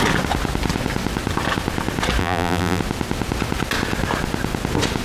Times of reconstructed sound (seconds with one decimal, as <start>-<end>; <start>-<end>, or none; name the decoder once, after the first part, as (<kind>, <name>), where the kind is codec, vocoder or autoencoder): 2.2-2.8 (vocoder, BigVGAN v2)